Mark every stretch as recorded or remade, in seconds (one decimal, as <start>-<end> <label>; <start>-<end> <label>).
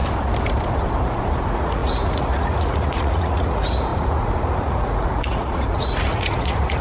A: 0.0-1.0 recorded; 1.0-6.8 remade